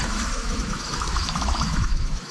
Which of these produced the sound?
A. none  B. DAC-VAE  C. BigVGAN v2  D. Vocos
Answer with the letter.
B